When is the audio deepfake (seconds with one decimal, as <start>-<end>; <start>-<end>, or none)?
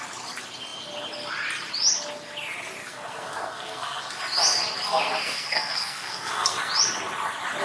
2.8-4.2; 4.9-6.7